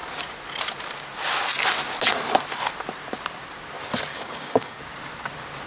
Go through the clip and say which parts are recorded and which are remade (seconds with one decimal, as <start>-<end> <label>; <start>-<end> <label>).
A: 0.0-4.1 recorded; 4.1-4.8 remade; 4.8-5.7 recorded